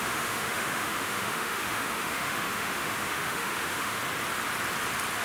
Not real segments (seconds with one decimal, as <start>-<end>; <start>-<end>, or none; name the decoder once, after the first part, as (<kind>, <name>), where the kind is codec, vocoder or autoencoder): 0.0-4.0 (autoencoder, DAC-VAE)